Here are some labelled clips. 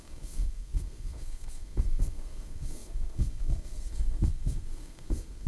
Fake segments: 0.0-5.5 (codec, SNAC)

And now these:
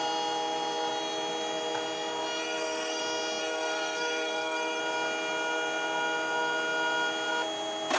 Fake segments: 2.4-3.0 (codec, SNAC); 3.4-4.8

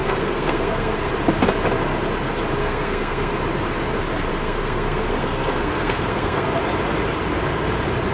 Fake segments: 0.0-1.1 (codec, SNAC); 2.6-3.3; 4.3-6.6

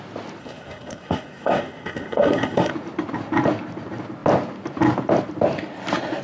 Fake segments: 0.4-2.7 (codec, SNAC)

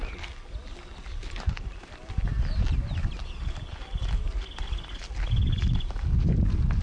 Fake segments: none

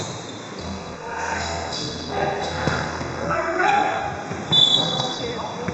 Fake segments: 0.6-4.0 (codec, SNAC); 4.6-5.2

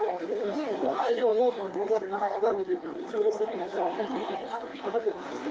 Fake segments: 0.0-5.5 (codec, SNAC)